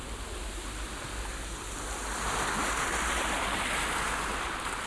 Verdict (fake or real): real